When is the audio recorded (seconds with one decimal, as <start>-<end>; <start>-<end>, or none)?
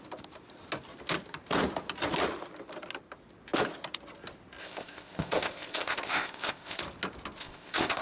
0.0-4.6; 6.8-7.4